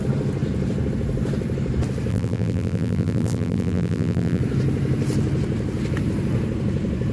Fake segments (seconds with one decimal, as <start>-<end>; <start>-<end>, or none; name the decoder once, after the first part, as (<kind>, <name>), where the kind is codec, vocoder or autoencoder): 2.1-4.4 (vocoder, BigVGAN v2)